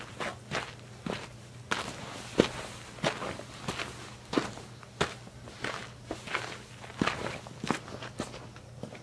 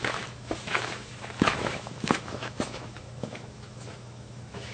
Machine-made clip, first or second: second